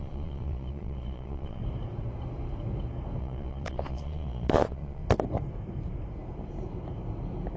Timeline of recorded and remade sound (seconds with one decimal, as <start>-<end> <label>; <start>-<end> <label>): 0.0-1.6 remade; 1.6-3.2 recorded; 3.2-5.0 remade; 5.0-7.6 recorded